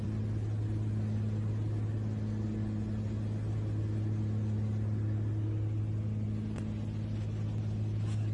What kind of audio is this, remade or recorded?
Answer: recorded